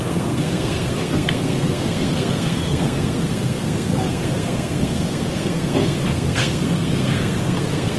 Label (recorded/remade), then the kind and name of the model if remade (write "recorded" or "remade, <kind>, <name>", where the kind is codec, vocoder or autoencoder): remade, codec, SNAC